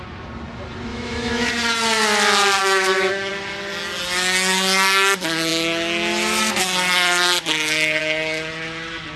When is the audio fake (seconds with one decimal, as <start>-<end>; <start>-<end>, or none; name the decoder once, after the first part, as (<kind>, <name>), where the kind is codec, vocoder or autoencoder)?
0.9-1.5 (autoencoder, DAC-VAE); 2.6-3.3

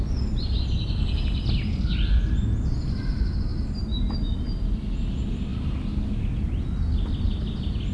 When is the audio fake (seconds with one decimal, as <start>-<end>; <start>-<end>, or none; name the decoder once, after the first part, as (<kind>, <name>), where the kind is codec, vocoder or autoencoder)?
none